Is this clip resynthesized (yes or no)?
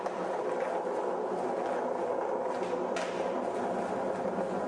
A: no